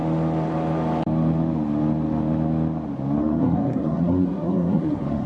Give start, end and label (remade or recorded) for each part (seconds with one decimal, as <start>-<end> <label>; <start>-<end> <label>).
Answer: 0.0-3.2 recorded; 3.2-5.3 remade